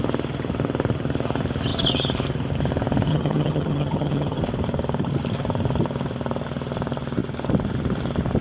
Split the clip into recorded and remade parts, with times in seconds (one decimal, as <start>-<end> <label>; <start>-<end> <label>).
0.0-3.1 recorded; 3.1-4.4 remade; 4.4-8.4 recorded